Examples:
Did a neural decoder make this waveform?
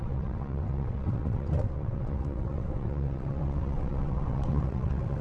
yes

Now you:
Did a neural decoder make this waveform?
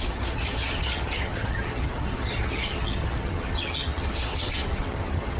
yes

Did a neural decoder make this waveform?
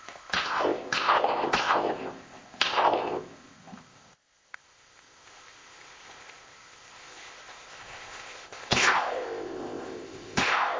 yes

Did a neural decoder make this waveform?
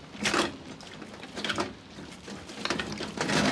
no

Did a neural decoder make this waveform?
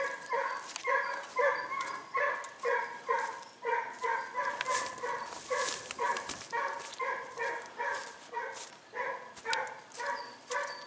no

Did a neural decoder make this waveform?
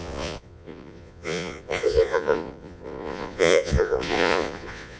yes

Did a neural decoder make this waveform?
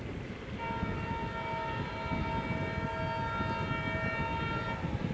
no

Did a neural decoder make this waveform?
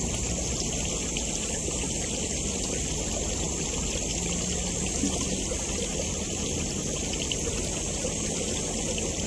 no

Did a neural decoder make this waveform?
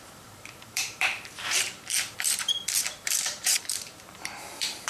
yes